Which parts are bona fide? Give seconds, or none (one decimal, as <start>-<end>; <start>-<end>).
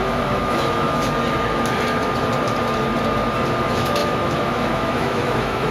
1.0-3.6